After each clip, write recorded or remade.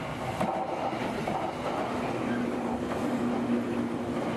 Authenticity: recorded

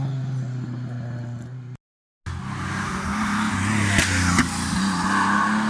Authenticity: recorded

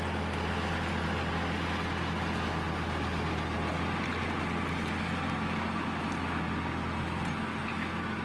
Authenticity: recorded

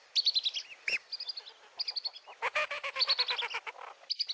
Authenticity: recorded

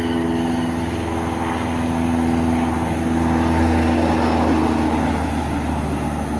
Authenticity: recorded